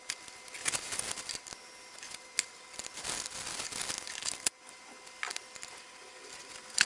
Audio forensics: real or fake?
real